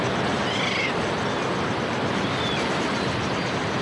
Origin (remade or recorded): recorded